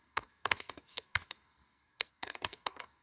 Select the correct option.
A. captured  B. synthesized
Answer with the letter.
B